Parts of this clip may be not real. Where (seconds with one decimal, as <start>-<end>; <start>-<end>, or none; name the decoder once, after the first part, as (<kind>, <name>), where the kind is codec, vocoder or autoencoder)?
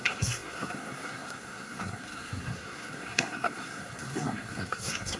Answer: 0.0-5.2 (codec, SNAC)